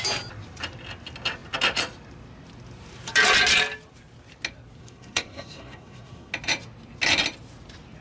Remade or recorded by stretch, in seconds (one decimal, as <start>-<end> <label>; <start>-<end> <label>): 0.0-4.8 recorded; 4.8-6.3 remade; 6.3-8.0 recorded